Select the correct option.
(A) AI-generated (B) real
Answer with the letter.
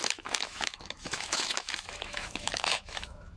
A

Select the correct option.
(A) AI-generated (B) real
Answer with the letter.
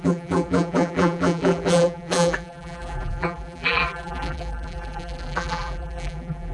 A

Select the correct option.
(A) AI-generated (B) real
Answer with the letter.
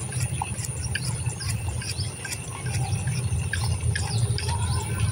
B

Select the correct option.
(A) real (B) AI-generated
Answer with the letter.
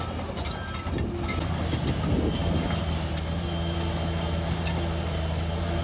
A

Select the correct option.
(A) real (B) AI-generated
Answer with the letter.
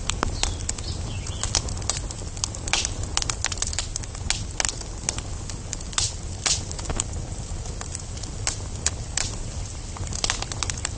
A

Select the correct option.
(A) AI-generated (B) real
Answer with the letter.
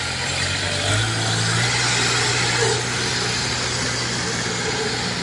B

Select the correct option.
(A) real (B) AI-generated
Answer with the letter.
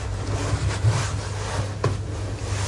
A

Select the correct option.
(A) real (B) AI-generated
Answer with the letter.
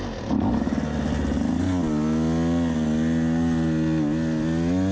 A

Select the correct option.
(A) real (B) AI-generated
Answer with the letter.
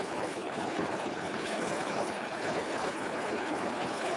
B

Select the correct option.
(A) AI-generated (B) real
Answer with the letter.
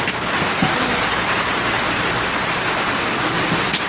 B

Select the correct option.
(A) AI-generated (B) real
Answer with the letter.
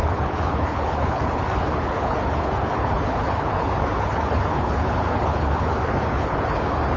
A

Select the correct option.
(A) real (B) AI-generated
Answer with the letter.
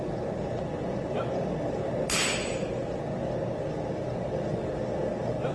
A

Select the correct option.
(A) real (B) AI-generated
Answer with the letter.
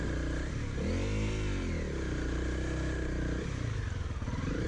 A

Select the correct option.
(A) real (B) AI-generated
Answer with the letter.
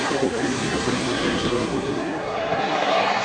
B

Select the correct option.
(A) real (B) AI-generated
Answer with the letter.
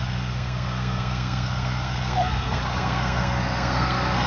B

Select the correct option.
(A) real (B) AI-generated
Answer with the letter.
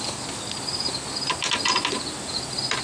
A